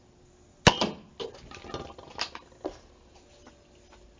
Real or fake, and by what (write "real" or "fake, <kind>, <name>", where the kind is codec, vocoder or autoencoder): real